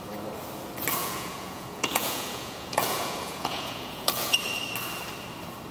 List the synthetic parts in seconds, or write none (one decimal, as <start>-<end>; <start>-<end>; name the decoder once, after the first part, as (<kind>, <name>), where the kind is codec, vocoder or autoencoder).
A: 1.0-4.3 (vocoder, Vocos)